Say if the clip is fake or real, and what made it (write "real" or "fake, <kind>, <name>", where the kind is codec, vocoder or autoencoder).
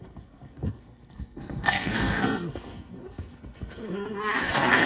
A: fake, codec, SNAC